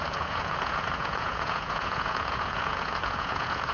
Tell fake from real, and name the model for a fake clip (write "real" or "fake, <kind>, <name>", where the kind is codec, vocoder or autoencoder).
fake, vocoder, Vocos